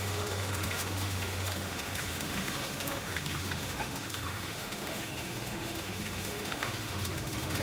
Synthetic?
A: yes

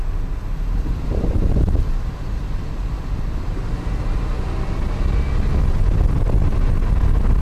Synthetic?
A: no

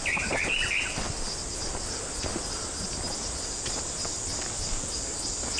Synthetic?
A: no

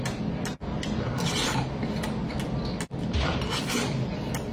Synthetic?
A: no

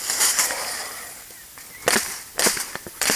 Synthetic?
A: yes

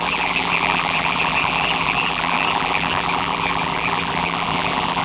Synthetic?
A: yes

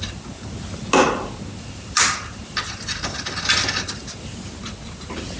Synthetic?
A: no